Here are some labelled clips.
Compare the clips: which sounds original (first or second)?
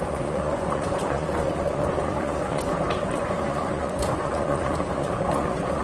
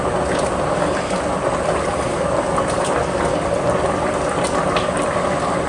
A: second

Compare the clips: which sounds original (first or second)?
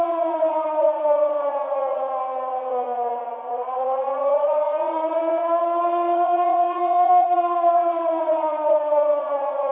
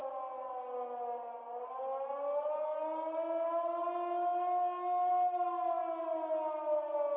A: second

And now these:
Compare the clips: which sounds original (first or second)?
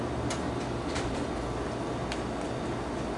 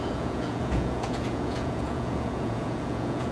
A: first